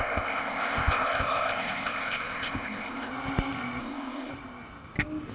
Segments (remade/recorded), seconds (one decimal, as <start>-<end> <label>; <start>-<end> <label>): 0.0-3.1 remade; 3.1-3.8 recorded; 3.8-4.3 remade; 4.3-5.3 recorded